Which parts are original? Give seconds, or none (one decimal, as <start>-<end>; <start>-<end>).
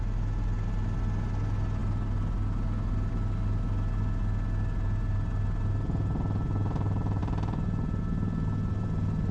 0.0-9.3